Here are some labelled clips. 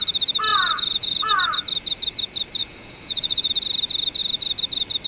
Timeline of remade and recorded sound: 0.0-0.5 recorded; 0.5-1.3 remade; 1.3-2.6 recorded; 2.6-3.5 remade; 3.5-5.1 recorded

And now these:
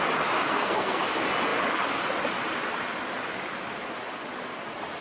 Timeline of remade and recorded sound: 0.0-0.5 recorded; 0.5-1.0 remade; 1.0-5.0 recorded

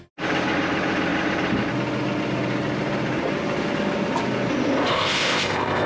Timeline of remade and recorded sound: 0.0-4.9 recorded; 4.9-5.9 remade

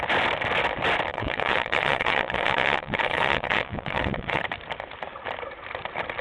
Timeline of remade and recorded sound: 0.0-1.1 recorded; 1.1-4.4 remade; 4.4-6.2 recorded